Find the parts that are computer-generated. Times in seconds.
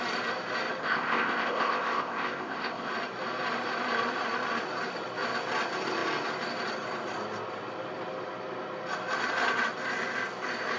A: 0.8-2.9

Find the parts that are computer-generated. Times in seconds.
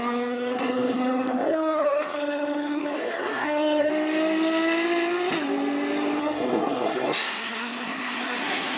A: 0.0-3.9; 6.2-8.8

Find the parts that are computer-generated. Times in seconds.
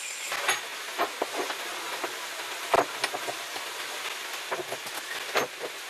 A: none